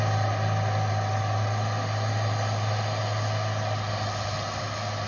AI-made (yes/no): no